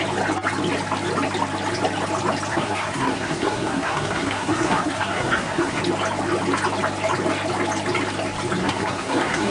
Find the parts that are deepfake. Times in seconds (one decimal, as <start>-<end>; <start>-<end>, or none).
2.5-5.8; 8.6-9.5